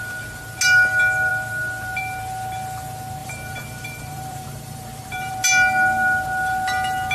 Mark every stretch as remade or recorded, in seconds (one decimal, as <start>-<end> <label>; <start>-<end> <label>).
0.0-3.2 recorded; 3.2-5.3 remade; 5.3-7.1 recorded